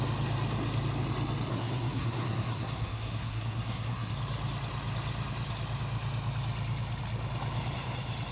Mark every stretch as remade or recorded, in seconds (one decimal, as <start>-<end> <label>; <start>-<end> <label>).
0.0-1.5 recorded; 1.5-4.1 remade; 4.1-8.3 recorded